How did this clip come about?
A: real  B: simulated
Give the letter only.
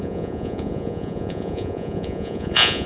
B